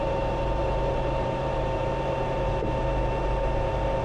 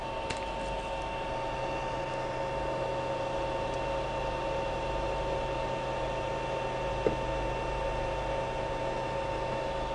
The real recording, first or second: second